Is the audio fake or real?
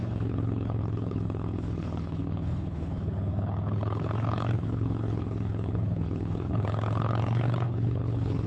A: fake